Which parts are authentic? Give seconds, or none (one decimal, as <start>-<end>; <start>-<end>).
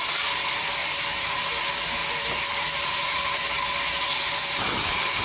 0.0-0.8; 1.6-5.2